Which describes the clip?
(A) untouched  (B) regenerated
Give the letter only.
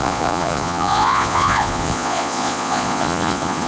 B